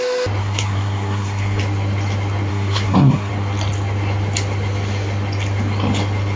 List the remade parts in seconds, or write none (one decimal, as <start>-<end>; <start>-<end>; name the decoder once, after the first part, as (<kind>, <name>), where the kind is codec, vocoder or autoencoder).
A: 0.4-1.6 (codec, SNAC); 2.5-3.3